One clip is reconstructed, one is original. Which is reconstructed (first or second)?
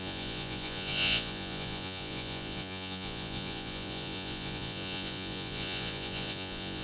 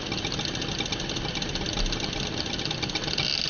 first